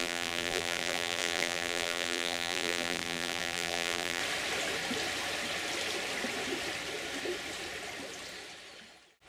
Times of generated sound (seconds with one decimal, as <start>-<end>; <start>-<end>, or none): 0.0-4.2